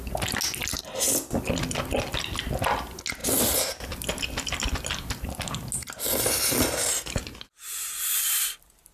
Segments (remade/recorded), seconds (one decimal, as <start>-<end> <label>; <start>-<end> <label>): 0.0-8.9 recorded